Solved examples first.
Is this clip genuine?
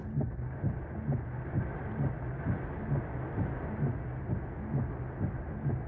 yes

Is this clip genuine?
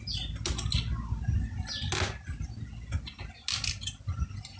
yes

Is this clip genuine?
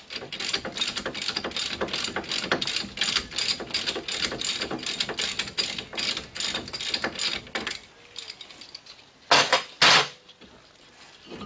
yes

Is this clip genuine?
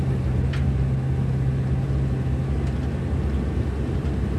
yes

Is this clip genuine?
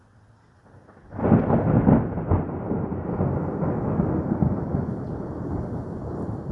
yes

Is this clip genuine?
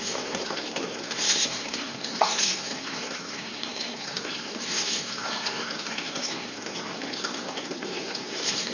no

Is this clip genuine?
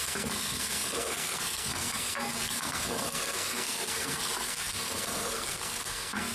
no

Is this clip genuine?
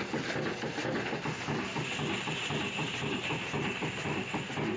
yes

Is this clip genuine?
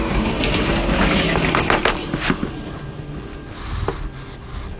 yes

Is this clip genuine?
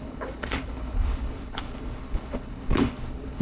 no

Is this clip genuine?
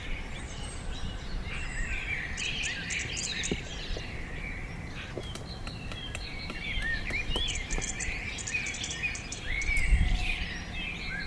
no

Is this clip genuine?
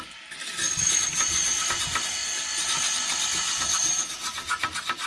yes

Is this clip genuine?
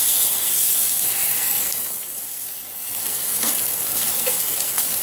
no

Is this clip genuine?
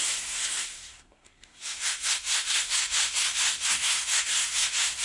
no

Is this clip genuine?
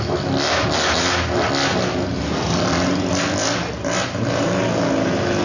yes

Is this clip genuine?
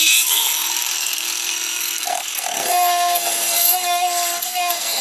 no